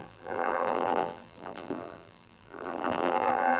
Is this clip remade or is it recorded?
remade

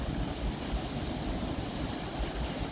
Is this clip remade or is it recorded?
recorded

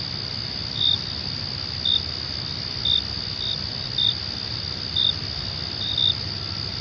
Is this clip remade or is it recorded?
recorded